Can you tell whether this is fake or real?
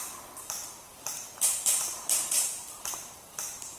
fake